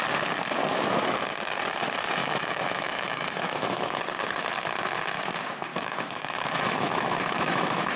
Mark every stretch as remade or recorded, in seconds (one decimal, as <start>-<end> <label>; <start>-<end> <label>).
0.0-2.2 recorded; 2.2-4.0 remade; 4.0-5.7 recorded; 5.7-8.0 remade